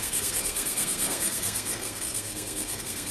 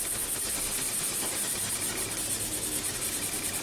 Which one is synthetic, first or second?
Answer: first